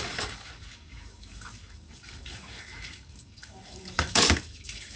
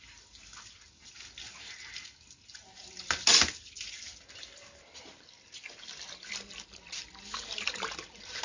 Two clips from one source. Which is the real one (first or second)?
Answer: second